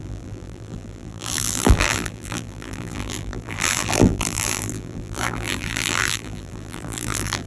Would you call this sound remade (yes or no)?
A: yes